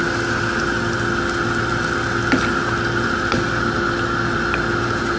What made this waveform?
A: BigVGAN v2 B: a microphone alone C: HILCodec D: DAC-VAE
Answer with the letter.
B